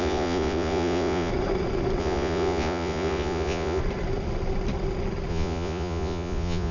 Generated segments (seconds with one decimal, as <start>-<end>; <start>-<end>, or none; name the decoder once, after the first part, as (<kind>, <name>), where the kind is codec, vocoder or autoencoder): 0.0-1.3 (vocoder, Vocos); 2.0-3.8; 5.3-6.7

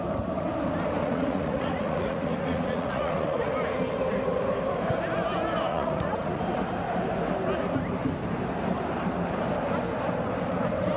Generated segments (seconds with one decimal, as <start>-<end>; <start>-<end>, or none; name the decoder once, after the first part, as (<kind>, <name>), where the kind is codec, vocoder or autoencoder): 1.0-3.5 (vocoder, Vocos); 5.7-6.4